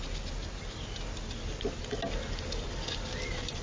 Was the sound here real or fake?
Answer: real